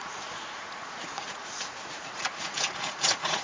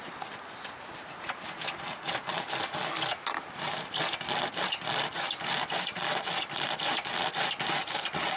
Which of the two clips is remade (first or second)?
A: first